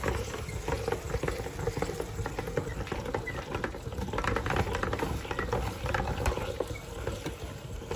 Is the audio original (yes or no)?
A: yes